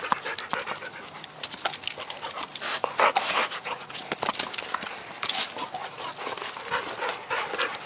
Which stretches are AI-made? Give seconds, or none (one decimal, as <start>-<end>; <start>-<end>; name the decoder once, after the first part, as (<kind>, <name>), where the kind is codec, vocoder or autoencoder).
3.4-4.0 (vocoder, Vocos)